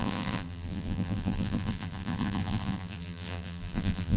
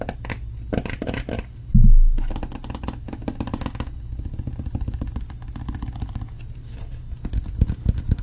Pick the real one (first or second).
second